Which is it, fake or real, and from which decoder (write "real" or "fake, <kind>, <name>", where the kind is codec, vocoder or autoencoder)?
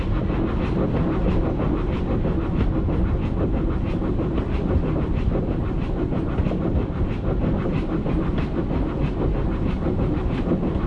real